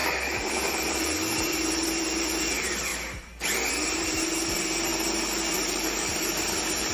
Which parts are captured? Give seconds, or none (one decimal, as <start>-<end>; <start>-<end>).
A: 2.9-3.7; 4.9-5.5